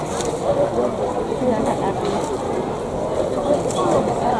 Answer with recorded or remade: remade